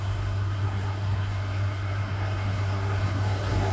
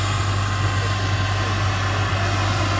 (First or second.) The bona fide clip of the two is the second